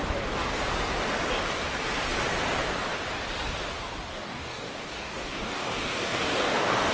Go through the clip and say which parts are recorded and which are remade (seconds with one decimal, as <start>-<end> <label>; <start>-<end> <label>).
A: 0.0-4.1 recorded; 4.1-6.9 remade